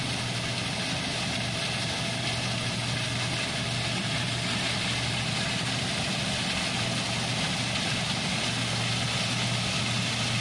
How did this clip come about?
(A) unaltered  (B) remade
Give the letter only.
A